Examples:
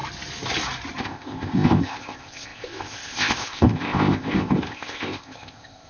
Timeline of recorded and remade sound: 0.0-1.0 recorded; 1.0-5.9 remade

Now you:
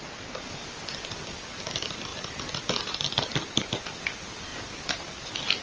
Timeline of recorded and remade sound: 0.0-5.6 recorded

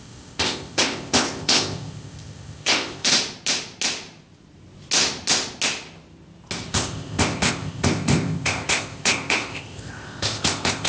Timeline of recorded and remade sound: 0.0-3.1 remade; 3.1-6.7 recorded; 6.7-10.9 remade

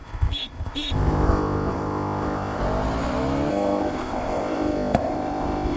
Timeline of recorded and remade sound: 0.0-2.6 remade; 2.6-3.5 recorded; 3.5-5.8 remade